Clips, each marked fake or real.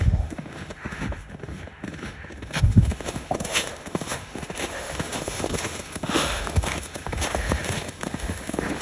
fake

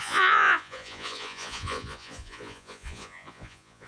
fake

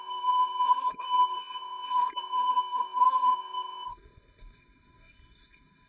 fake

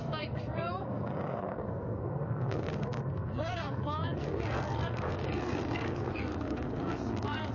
fake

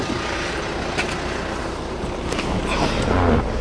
real